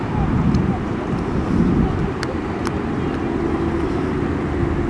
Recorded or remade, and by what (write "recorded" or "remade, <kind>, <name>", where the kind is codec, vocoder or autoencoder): recorded